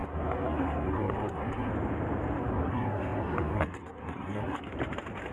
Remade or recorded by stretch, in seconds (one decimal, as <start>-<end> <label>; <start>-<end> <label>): 0.0-1.7 remade; 1.7-2.4 recorded; 2.4-4.7 remade; 4.7-5.3 recorded